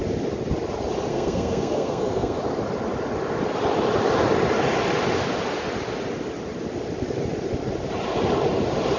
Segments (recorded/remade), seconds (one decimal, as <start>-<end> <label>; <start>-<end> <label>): 0.0-1.1 recorded; 1.1-2.4 remade; 2.4-9.0 recorded